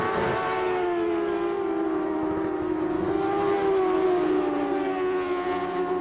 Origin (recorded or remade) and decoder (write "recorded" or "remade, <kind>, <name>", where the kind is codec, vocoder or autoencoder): recorded